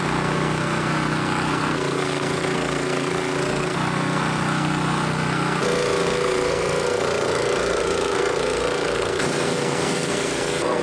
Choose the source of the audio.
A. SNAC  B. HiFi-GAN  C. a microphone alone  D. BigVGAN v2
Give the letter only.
A